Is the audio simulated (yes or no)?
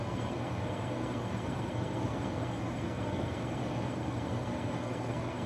yes